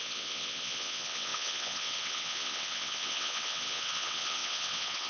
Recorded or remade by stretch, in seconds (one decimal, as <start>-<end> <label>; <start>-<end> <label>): 0.0-5.1 remade